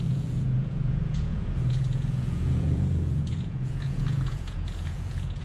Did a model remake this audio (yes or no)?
yes